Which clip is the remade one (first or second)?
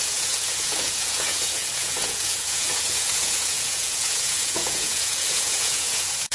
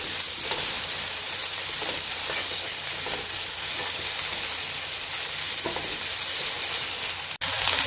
first